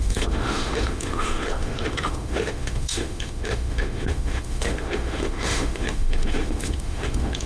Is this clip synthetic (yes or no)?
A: yes